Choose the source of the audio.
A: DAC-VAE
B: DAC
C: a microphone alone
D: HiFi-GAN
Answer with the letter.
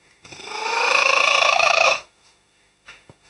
A